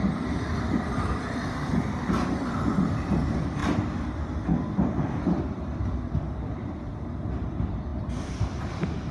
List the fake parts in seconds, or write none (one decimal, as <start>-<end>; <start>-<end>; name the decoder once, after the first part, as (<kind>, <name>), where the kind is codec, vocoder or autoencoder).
0.0-7.9 (vocoder, BigVGAN v2); 8.4-9.1